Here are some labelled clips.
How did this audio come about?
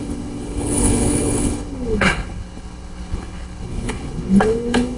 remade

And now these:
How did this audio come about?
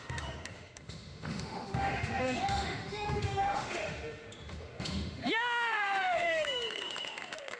remade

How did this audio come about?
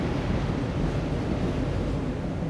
recorded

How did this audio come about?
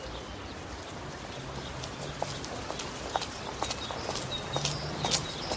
recorded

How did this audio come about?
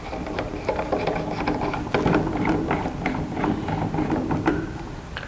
recorded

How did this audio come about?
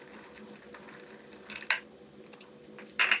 recorded